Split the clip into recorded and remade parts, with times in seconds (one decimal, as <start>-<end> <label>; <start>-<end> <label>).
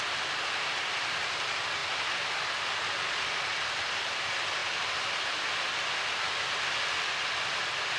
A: 0.0-8.0 recorded